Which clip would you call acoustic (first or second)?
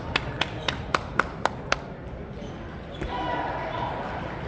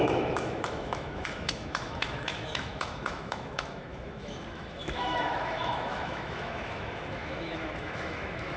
first